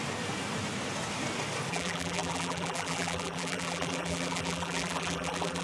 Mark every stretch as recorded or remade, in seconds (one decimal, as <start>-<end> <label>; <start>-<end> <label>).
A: 0.0-1.7 recorded; 1.7-5.6 remade